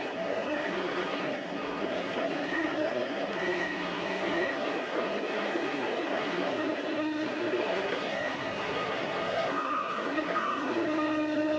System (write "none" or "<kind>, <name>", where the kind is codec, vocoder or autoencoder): codec, SNAC